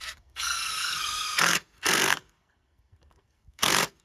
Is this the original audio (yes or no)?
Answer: no